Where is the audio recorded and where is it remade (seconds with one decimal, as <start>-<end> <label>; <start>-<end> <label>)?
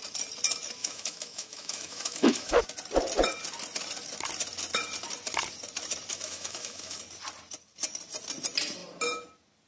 0.0-0.8 recorded; 0.8-2.6 remade; 2.6-6.1 recorded; 6.1-7.0 remade; 7.0-9.7 recorded